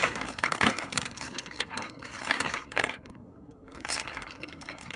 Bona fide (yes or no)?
no